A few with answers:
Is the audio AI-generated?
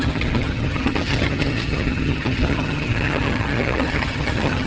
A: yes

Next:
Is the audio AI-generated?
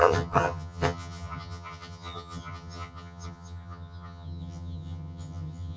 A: yes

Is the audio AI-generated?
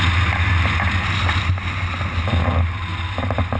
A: no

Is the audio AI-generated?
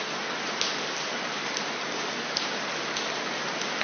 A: no